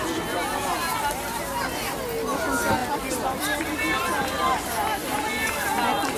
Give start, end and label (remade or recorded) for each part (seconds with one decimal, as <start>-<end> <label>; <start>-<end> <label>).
0.0-2.8 recorded; 2.8-3.6 remade; 3.6-6.2 recorded